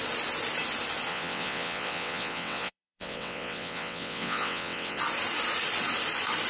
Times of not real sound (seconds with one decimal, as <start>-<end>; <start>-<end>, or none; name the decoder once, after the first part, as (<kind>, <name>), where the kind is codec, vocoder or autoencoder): 1.1-5.0 (vocoder, WaveNeXt)